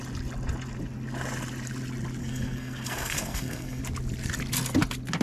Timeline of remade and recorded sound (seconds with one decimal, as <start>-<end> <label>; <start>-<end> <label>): 0.0-2.2 recorded; 2.2-3.8 remade; 3.8-5.2 recorded